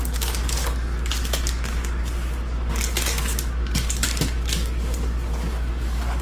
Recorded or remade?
remade